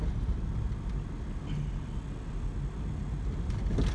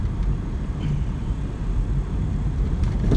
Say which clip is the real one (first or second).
first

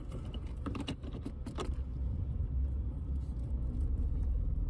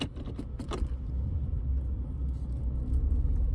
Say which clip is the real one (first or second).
second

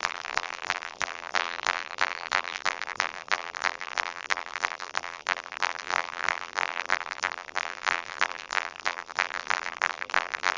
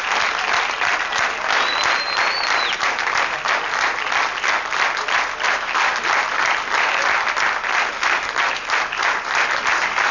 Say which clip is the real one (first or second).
second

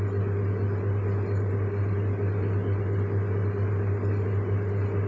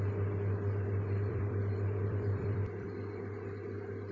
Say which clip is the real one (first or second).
first